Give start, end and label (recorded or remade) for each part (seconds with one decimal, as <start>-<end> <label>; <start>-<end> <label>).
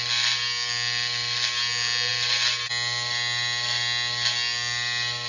0.0-5.3 recorded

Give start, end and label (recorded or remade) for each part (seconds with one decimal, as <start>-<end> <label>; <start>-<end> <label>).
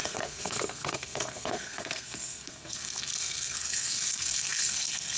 0.0-5.2 remade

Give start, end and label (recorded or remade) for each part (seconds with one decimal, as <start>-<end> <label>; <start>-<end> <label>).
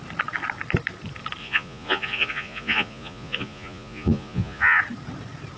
0.0-1.4 recorded; 1.4-4.8 remade; 4.8-5.6 recorded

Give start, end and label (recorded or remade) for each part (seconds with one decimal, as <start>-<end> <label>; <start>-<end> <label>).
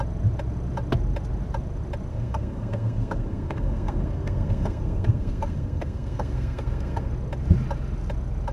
0.0-2.1 recorded; 2.1-7.1 remade; 7.1-8.5 recorded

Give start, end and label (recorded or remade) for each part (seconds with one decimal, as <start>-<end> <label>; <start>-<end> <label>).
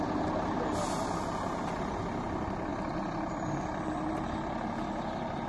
0.0-5.5 recorded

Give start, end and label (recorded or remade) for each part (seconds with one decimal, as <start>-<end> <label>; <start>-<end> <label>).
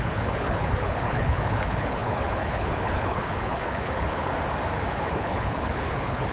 0.0-4.3 remade; 4.3-4.9 recorded; 4.9-6.3 remade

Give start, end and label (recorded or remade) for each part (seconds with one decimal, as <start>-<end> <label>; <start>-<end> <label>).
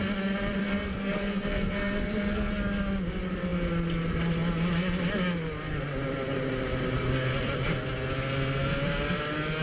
0.0-0.6 recorded; 0.6-2.5 remade; 2.5-9.6 recorded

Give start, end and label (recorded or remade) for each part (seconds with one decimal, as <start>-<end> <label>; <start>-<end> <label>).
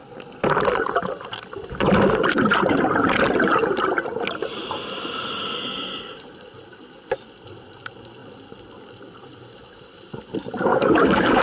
0.0-10.7 recorded; 10.7-11.4 remade